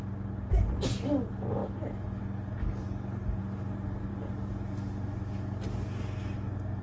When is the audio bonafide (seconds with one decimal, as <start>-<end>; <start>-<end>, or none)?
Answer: 0.0-6.8